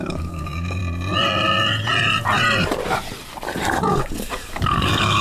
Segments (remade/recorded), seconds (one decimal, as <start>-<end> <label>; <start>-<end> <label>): 0.0-0.8 remade; 0.8-3.8 recorded; 3.8-5.2 remade